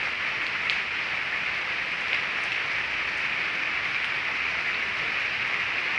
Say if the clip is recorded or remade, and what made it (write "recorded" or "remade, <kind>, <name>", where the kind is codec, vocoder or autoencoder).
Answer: recorded